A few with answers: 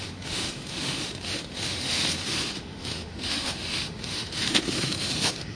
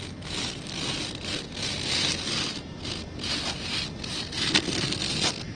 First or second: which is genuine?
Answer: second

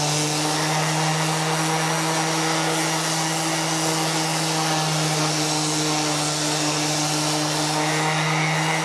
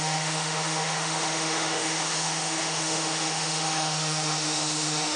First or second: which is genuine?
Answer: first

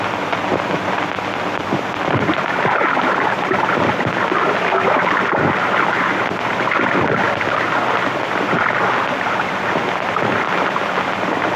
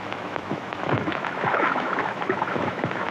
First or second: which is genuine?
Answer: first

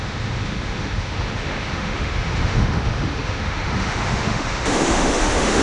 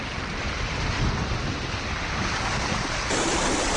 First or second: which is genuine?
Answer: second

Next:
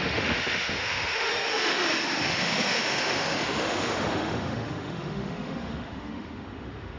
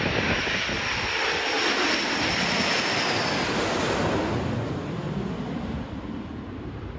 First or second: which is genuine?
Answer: second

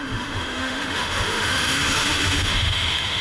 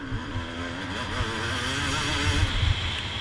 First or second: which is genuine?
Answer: second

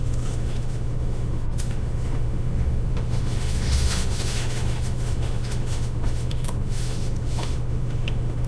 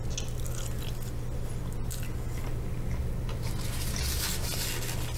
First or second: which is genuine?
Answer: second